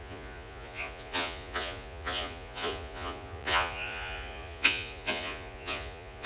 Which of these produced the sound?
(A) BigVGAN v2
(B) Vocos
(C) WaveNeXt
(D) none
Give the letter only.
B